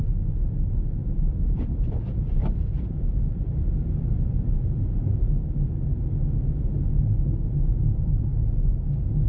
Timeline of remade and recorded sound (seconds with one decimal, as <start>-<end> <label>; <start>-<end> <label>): 0.0-1.0 recorded; 1.0-2.0 remade; 2.0-2.4 recorded; 2.4-4.2 remade; 4.2-7.7 recorded; 7.7-8.3 remade; 8.3-9.3 recorded